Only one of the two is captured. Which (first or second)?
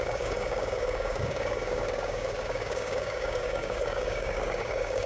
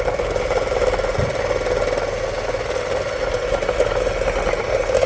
second